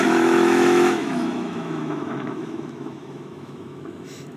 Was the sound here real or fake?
fake